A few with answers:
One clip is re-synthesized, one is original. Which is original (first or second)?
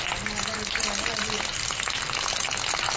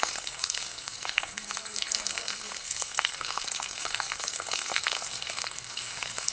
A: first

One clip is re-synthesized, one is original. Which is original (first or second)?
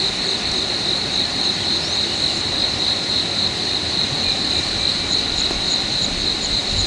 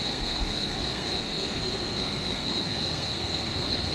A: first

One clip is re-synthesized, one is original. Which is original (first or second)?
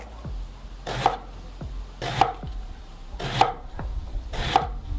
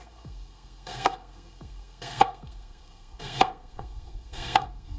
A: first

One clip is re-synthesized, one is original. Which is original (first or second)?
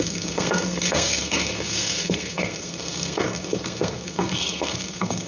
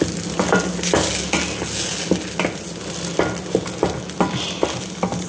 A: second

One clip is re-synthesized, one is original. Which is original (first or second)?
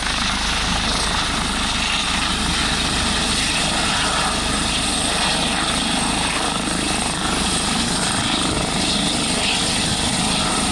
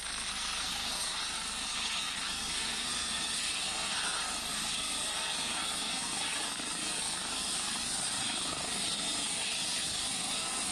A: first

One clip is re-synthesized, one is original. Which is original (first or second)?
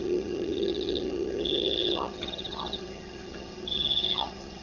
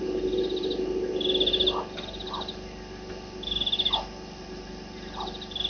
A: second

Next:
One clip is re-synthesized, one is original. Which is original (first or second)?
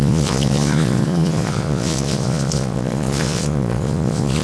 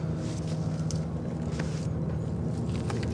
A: second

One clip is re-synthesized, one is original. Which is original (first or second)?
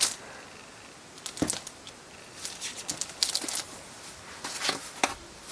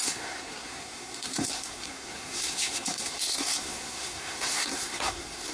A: first